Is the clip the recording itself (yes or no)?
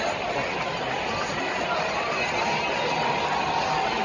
yes